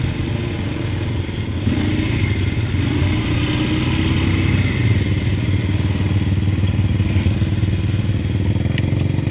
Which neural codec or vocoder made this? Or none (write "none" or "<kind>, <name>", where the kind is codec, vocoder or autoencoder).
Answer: none